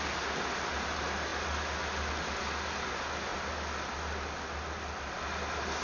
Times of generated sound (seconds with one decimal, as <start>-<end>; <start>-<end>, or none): none